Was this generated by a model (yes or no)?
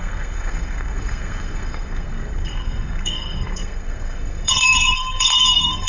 yes